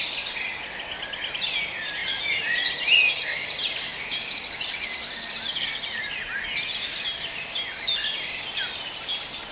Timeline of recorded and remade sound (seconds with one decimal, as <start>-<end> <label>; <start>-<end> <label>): 0.0-2.0 recorded; 2.0-3.1 remade; 3.1-9.5 recorded